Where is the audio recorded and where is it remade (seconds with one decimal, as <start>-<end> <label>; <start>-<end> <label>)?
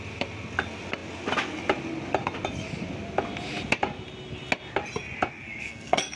0.0-5.3 recorded; 5.3-6.2 remade